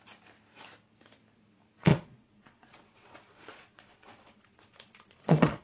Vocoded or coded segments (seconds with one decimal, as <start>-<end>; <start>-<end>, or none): 1.9-5.6